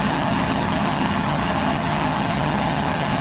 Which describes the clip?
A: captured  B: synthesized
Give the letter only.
B